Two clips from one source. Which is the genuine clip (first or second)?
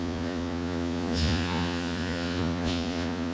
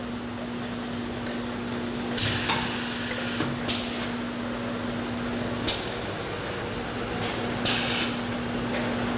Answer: second